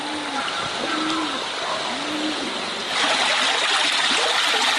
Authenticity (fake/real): real